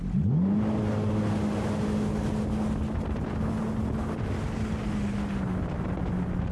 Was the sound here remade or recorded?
recorded